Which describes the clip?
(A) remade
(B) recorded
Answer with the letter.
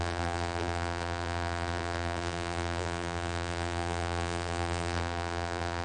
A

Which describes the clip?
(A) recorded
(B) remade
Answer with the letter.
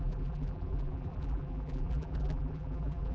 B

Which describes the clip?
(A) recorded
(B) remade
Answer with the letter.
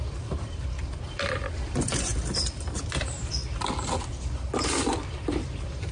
B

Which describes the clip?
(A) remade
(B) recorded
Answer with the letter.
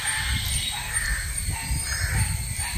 B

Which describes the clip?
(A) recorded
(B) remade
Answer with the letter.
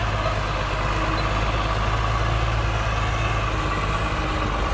A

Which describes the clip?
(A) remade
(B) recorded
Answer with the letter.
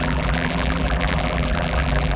A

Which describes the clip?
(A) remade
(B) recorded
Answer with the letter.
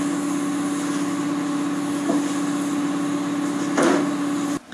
B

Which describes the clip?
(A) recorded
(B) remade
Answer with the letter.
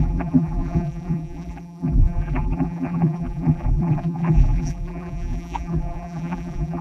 B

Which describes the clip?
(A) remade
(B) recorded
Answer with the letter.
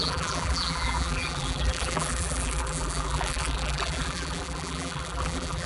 A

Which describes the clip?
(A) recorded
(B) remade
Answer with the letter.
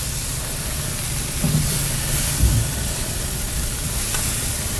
A